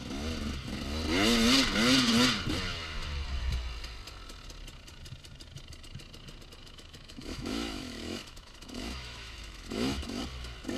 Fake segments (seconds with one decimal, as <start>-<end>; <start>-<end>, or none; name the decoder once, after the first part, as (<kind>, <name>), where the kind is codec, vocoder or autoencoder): 6.6-10.2 (autoencoder, DAC-VAE)